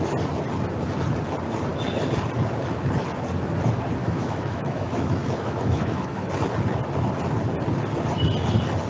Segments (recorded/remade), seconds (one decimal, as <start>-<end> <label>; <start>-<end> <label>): 0.0-4.0 recorded; 4.0-6.3 remade; 6.3-8.9 recorded